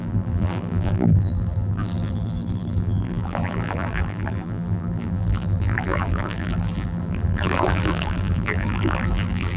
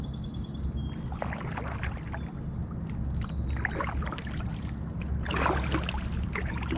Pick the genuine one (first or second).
second